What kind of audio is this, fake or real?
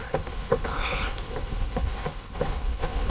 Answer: fake